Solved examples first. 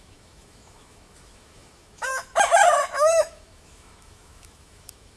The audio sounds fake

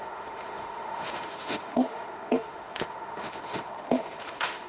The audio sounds fake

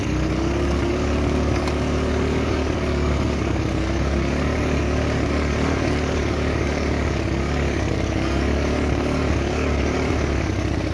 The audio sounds fake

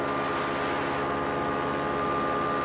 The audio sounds real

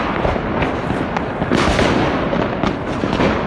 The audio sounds real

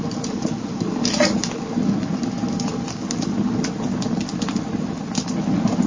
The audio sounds real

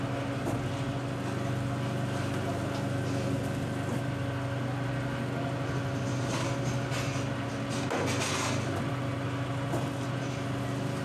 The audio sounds real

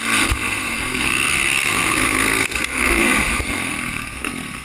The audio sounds fake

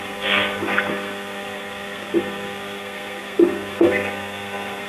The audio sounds fake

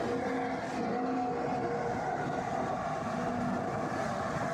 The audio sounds real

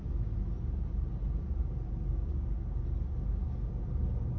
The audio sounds real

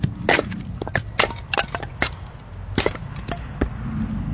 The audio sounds real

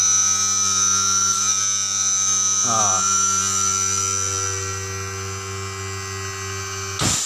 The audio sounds real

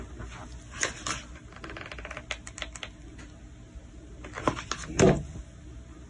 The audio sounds real